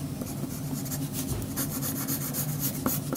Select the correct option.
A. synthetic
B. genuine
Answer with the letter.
B